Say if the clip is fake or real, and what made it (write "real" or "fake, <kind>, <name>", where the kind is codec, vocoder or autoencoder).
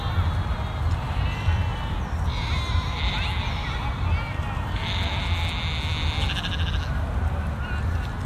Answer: real